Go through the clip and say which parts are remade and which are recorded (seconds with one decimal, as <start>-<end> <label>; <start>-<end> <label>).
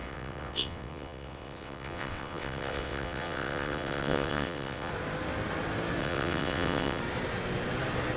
0.0-4.9 remade; 4.9-6.0 recorded; 6.0-7.0 remade; 7.0-8.2 recorded